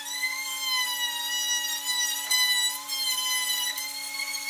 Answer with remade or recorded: recorded